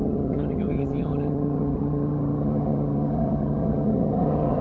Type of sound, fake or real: fake